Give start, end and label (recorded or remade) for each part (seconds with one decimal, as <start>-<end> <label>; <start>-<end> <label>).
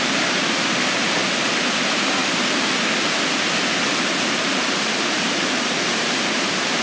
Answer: 0.0-1.2 remade; 1.2-1.8 recorded; 1.8-2.2 remade; 2.2-4.4 recorded; 4.4-6.8 remade